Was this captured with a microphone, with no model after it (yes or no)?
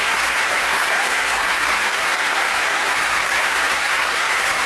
no